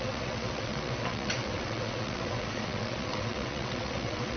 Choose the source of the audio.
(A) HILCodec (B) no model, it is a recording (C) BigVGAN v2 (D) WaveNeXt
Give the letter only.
D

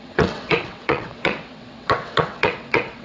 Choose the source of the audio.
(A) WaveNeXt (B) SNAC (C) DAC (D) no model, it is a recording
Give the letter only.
A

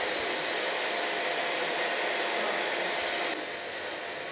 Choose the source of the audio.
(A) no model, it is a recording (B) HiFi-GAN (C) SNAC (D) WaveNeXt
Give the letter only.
A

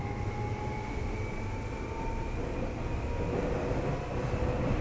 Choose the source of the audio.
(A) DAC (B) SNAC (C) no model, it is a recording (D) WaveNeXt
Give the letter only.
C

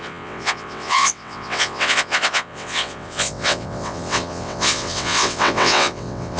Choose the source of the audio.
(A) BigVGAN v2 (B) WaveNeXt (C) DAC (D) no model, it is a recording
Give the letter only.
B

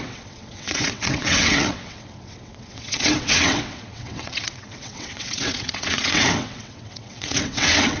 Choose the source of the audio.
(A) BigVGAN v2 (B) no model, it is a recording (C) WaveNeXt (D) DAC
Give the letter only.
C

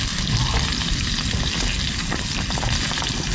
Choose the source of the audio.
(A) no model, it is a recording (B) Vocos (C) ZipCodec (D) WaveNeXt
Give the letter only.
A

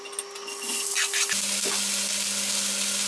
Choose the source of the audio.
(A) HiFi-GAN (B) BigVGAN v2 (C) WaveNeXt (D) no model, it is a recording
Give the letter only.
D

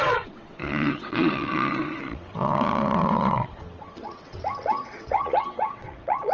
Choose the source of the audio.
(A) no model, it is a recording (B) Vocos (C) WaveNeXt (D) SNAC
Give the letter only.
C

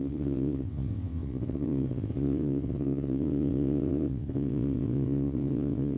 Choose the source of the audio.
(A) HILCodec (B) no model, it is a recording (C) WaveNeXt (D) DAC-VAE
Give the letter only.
C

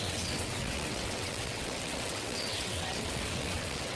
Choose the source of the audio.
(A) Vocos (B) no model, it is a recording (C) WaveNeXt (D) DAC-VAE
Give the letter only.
C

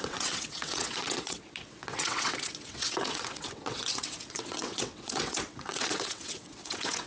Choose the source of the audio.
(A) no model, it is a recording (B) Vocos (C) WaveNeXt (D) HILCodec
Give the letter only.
C